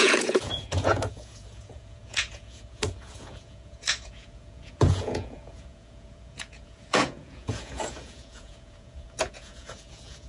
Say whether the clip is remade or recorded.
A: remade